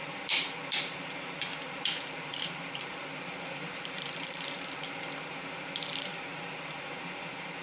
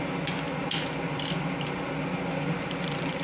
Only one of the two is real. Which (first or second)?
second